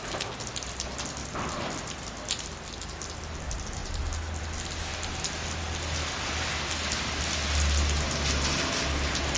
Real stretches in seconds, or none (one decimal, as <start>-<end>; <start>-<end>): 0.0-9.4